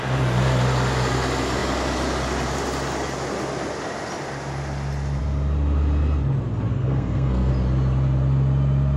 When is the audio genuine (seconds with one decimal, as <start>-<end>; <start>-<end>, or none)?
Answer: 0.0-6.7; 7.5-9.0